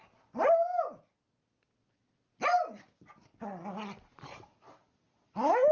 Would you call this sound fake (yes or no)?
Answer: no